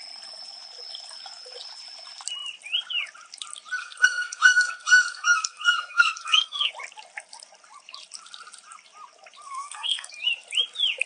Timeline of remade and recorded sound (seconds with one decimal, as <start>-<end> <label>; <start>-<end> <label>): 0.0-3.8 recorded; 3.8-6.7 remade; 6.7-9.5 recorded; 9.5-10.1 remade; 10.1-11.1 recorded